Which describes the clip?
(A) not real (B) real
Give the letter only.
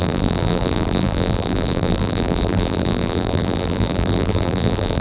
A